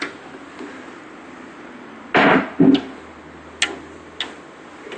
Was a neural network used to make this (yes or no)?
no